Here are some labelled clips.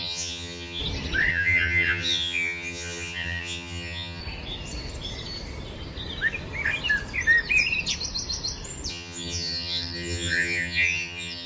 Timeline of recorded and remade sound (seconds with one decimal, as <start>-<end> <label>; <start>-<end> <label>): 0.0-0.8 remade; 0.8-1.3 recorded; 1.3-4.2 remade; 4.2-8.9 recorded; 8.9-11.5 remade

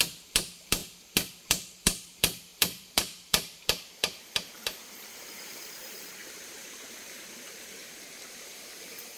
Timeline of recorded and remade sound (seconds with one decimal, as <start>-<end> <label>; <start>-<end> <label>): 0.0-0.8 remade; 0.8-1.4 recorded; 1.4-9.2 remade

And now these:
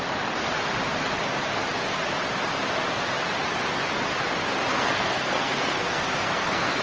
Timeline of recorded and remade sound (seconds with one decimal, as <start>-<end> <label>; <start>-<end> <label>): 0.0-4.7 recorded; 4.7-6.8 remade

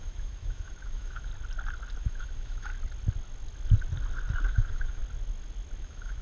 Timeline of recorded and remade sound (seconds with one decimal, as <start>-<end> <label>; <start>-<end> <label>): 0.0-1.3 remade; 1.3-2.0 recorded; 2.0-2.7 remade; 2.7-4.5 recorded; 4.5-5.0 remade; 5.0-5.8 recorded; 5.8-6.2 remade